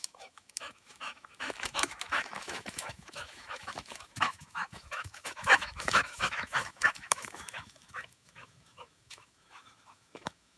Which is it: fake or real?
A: fake